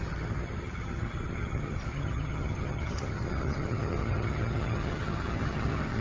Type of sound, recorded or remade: remade